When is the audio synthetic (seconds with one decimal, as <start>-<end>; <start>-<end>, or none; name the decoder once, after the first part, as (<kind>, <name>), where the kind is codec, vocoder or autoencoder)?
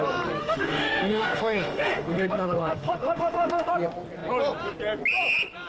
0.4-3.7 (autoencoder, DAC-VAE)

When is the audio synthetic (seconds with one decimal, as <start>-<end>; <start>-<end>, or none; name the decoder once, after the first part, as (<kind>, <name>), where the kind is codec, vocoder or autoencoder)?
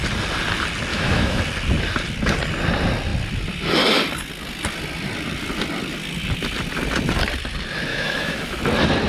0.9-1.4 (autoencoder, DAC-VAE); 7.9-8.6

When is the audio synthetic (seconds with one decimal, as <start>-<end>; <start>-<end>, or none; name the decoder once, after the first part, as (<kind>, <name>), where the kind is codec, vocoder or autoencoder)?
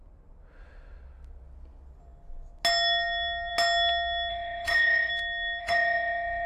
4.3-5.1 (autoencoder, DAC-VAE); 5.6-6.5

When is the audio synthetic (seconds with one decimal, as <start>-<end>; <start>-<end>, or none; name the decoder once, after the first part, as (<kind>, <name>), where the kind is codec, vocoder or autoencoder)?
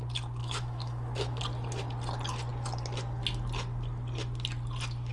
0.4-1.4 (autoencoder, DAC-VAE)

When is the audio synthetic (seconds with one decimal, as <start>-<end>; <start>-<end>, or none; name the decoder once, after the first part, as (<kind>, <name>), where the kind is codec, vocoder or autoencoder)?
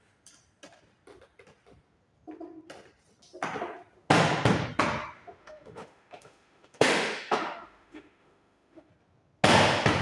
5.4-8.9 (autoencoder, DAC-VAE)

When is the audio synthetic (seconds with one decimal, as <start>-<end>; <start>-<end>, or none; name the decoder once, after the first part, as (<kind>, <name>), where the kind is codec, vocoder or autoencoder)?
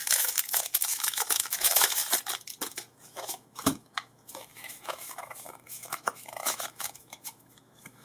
0.0-2.0 (autoencoder, DAC-VAE); 2.7-8.0